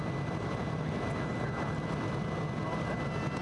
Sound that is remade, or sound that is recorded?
recorded